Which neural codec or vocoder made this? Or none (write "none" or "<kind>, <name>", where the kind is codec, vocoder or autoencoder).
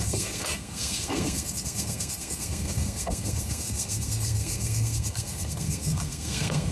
codec, SNAC